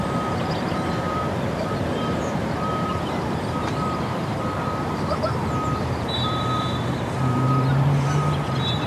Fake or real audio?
fake